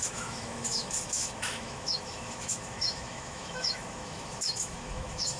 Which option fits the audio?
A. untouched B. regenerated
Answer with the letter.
B